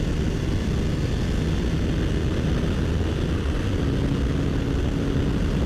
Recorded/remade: recorded